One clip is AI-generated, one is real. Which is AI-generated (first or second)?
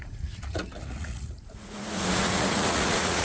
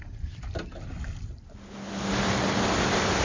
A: first